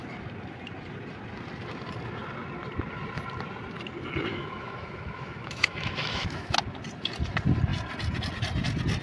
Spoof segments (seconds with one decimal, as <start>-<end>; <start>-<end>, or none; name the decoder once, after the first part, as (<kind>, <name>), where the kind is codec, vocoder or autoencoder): 4.3-6.5 (autoencoder, DAC-VAE)